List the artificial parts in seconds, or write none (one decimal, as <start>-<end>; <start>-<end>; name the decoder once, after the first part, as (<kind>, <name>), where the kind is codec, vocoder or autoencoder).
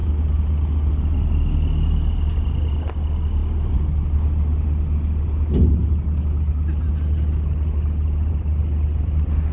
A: none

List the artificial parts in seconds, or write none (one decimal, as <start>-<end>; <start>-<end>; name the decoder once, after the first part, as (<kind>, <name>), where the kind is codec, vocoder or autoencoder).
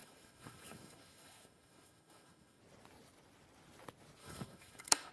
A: 0.0-2.6 (autoencoder, DAC-VAE); 4.2-5.1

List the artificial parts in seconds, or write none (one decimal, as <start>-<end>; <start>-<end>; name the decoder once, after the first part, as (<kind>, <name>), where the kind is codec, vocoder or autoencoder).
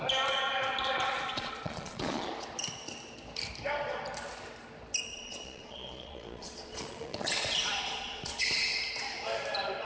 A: 1.3-2.3 (vocoder, Vocos); 5.1-8.4